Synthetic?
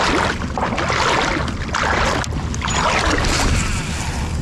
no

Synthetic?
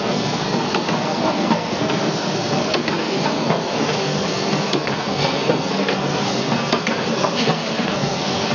yes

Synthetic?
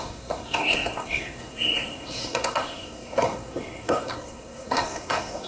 yes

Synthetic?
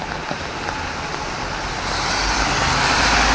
no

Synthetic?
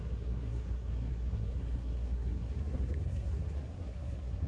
yes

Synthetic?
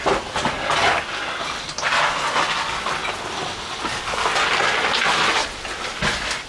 no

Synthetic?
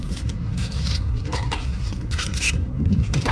yes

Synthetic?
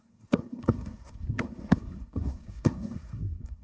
yes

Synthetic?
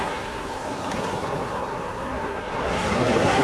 yes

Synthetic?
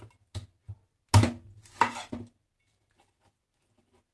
no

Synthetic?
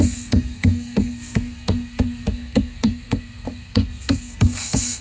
yes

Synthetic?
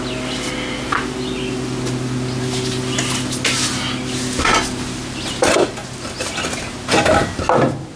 no